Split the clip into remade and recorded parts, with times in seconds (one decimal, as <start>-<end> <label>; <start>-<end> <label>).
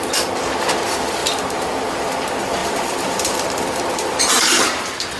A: 0.0-2.6 recorded; 2.6-4.8 remade; 4.8-5.2 recorded